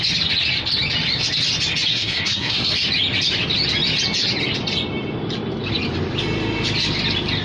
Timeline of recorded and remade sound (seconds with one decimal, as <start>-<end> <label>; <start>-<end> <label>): 0.0-1.9 recorded; 1.9-2.7 remade; 2.7-7.4 recorded